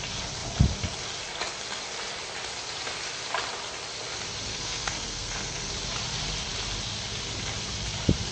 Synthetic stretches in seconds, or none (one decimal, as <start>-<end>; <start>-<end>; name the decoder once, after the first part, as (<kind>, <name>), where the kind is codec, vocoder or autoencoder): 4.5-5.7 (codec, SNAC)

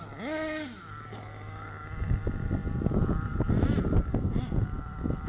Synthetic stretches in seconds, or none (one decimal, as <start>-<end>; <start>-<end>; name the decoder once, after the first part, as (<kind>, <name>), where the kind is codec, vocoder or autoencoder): none

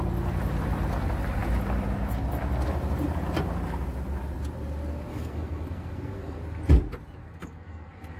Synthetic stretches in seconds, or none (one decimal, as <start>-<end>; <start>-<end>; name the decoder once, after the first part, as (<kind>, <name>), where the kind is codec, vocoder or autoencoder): 5.1-6.4 (codec, SNAC); 7.2-8.2